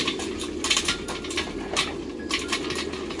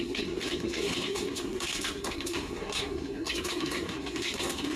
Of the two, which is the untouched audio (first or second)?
first